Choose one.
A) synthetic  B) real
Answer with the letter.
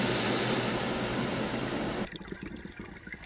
B